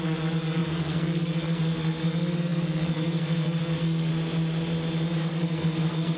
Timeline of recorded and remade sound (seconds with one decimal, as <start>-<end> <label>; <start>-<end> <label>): 0.0-4.1 remade; 4.1-5.2 recorded; 5.2-6.2 remade